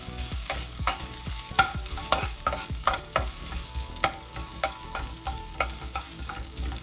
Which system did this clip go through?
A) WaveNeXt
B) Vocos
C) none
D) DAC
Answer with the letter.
D